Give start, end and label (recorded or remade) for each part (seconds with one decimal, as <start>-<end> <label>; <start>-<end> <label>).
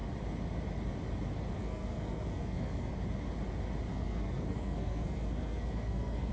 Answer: 0.0-1.6 recorded; 1.6-2.9 remade; 2.9-3.9 recorded; 3.9-6.3 remade